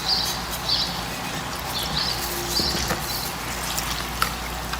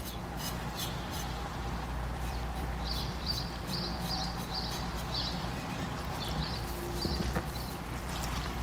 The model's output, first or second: second